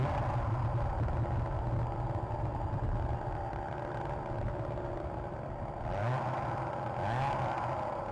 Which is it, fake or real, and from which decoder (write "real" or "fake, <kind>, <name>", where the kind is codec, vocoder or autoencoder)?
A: real